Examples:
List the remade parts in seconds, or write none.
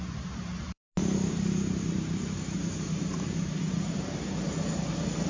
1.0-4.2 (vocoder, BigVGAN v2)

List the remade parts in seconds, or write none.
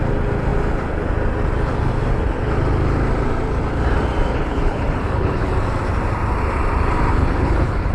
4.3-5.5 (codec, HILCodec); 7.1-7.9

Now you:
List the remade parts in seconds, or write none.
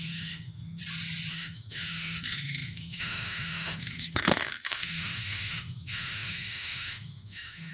0.0-0.8 (autoencoder, DAC-VAE); 1.3-7.7